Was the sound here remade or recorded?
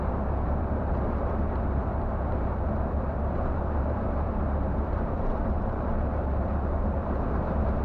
remade